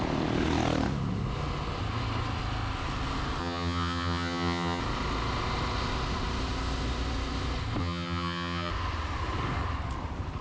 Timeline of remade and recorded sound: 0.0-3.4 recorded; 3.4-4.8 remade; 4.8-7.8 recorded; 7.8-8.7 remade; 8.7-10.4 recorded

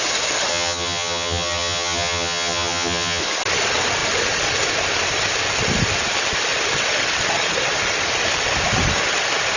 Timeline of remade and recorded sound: 0.0-0.5 recorded; 0.5-3.2 remade; 3.2-9.6 recorded

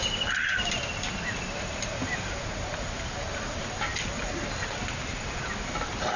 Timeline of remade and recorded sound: 0.0-6.2 recorded

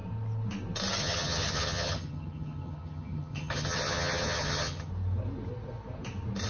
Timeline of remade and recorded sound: 0.0-1.0 recorded; 1.0-4.9 remade; 4.9-6.5 recorded

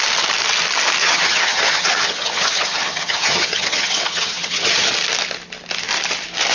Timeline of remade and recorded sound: 0.0-1.0 recorded; 1.0-4.9 remade; 4.9-6.5 recorded